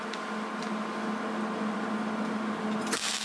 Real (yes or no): yes